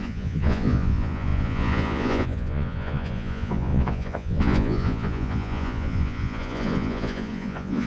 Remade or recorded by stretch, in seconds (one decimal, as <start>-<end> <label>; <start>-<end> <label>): 0.0-7.9 remade